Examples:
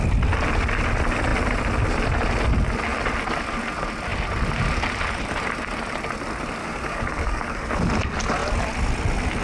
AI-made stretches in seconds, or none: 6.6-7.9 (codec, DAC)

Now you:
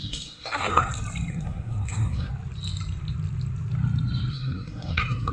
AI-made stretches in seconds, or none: 0.0-0.9 (codec, SNAC); 1.3-2.3; 4.3-5.3

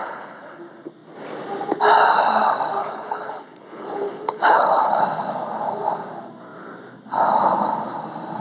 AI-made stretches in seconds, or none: 0.0-0.6 (codec, HILCodec); 2.8-5.0

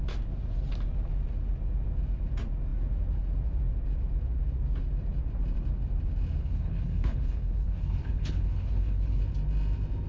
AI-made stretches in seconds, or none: 6.4-9.2 (codec, HILCodec)

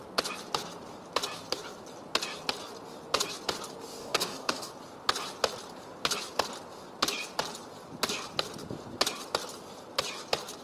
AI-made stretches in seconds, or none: 4.0-4.7 (codec, DAC)